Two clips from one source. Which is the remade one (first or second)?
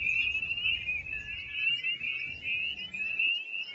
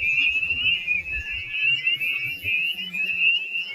second